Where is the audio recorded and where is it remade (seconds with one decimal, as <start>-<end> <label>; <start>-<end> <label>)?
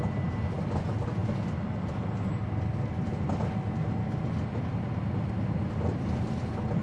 0.0-6.8 recorded